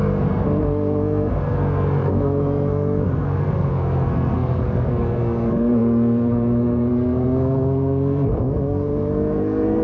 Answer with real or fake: fake